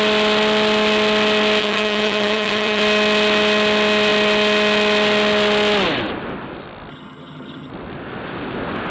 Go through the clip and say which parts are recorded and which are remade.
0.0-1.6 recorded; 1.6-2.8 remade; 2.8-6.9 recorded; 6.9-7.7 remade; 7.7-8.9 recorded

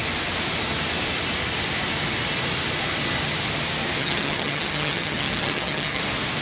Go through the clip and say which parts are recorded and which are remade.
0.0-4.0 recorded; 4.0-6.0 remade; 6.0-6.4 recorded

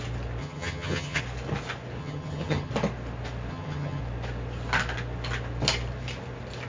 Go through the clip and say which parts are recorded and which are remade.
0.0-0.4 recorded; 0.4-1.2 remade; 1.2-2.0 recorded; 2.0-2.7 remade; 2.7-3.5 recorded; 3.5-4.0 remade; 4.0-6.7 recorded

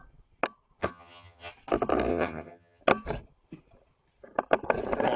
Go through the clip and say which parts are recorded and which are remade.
0.0-0.8 recorded; 0.8-1.5 remade; 1.5-2.1 recorded; 2.1-2.8 remade; 2.8-5.2 recorded